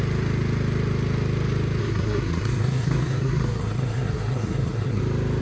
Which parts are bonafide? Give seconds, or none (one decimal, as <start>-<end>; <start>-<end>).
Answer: 0.0-1.8; 5.0-5.4